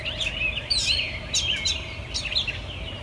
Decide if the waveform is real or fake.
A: real